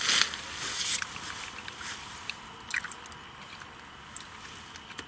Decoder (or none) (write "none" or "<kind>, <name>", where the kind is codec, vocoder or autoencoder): none